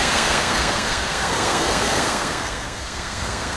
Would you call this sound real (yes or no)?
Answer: no